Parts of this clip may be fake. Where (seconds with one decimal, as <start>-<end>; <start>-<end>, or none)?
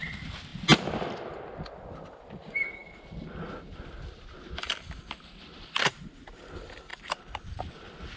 none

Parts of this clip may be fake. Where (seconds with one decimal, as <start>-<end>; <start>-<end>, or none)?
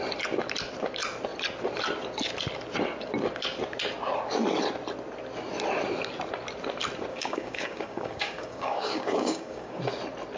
7.1-9.8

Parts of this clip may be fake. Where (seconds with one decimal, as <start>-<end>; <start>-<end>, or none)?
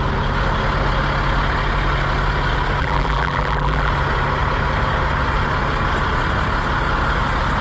2.8-3.9